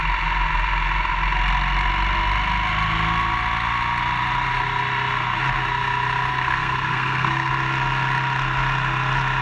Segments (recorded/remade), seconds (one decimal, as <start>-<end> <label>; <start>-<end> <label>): 0.0-6.3 recorded; 6.3-7.5 remade; 7.5-9.4 recorded